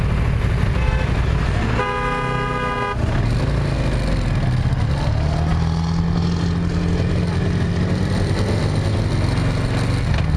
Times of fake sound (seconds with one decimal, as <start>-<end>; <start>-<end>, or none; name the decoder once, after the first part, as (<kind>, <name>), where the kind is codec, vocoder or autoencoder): none